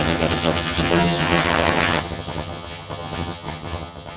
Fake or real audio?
fake